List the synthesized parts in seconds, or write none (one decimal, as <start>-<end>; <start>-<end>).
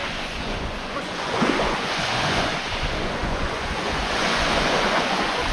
0.0-5.5